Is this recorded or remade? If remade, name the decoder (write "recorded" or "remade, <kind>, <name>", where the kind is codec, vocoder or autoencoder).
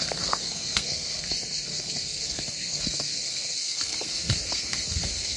remade, codec, SNAC